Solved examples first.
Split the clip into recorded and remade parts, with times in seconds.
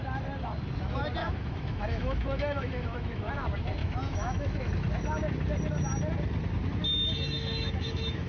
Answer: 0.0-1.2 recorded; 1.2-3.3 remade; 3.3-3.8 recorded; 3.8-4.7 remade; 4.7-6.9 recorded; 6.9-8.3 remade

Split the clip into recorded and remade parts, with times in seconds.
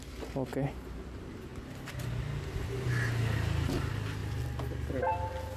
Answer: 0.0-0.5 recorded; 0.5-1.1 remade; 1.1-5.6 recorded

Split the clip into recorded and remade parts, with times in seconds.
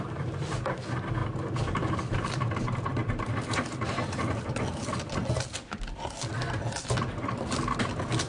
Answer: 0.0-1.2 recorded; 1.2-3.6 remade; 3.6-8.3 recorded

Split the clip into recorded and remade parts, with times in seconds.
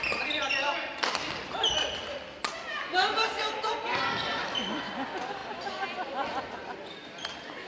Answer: 0.0-7.7 recorded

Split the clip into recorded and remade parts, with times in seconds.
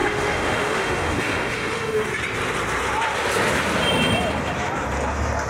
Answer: 0.0-2.1 remade; 2.1-5.5 recorded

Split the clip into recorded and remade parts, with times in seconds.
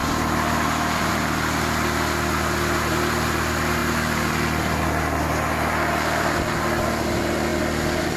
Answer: 0.0-8.2 recorded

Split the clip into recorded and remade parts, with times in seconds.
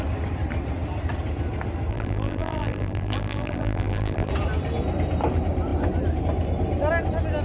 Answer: 0.0-1.9 recorded; 1.9-4.3 remade; 4.3-7.4 recorded